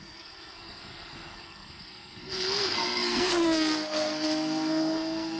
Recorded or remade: remade